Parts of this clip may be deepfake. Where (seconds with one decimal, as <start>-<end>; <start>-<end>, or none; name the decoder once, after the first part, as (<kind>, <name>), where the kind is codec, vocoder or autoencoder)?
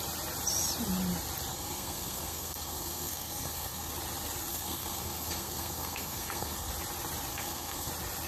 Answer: 1.5-3.9 (codec, SNAC); 4.5-6.7; 7.3-7.9